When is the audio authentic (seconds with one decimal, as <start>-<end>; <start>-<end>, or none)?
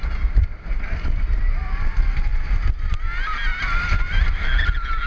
0.0-5.1